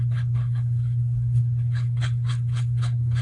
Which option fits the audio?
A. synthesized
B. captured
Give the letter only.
A